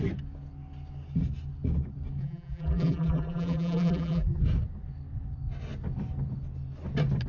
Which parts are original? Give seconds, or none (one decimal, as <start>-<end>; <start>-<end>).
0.0-2.2; 4.4-7.3